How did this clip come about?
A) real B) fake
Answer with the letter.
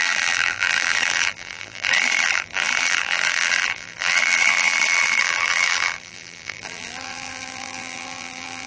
B